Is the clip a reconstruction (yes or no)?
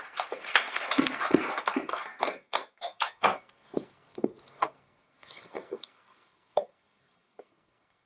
yes